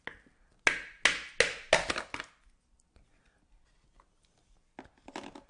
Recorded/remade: recorded